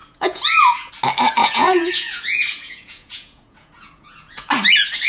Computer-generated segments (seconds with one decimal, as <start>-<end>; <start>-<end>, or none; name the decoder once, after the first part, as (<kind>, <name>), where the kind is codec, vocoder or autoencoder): 0.0-0.9 (vocoder, Vocos); 1.4-4.5